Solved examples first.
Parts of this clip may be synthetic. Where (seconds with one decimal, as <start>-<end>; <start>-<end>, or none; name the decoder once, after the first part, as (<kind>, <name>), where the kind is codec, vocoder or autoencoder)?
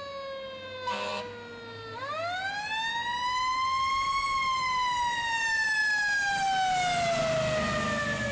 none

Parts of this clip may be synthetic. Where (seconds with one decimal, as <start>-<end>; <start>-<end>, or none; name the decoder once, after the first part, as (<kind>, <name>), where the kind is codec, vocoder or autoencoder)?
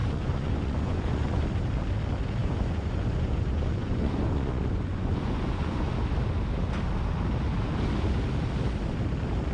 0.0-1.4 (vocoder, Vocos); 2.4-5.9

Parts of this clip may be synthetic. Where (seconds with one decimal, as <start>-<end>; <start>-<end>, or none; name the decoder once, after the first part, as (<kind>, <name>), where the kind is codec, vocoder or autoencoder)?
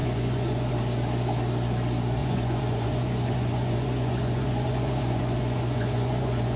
0.0-0.7 (vocoder, Vocos); 2.2-6.6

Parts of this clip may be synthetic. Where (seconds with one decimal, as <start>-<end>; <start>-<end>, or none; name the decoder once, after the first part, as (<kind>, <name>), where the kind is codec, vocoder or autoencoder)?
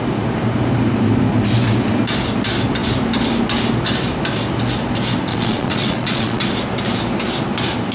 5.3-6.4 (vocoder, Vocos)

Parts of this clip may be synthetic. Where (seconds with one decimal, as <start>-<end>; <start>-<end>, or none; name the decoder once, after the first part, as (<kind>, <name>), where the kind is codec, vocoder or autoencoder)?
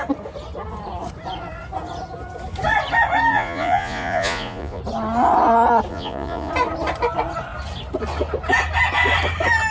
3.3-4.8 (vocoder, Vocos); 5.9-6.5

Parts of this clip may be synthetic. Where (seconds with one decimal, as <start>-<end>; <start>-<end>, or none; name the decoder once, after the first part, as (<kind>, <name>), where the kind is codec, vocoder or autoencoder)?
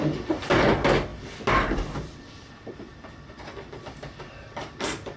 none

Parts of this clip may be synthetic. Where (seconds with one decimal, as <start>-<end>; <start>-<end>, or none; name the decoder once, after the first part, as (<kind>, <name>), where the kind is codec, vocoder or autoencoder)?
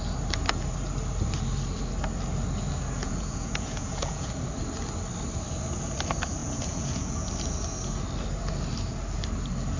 3.0-4.3 (vocoder, Vocos); 6.4-7.3